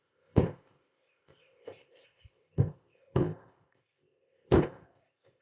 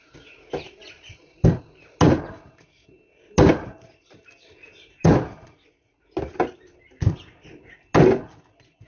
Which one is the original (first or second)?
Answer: second